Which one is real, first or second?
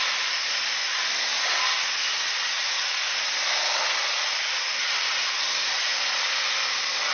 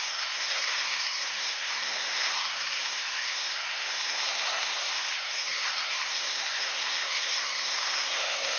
first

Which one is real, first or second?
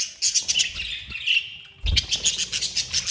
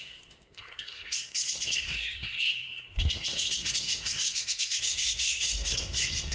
first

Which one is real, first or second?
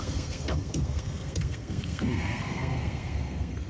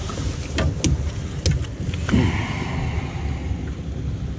second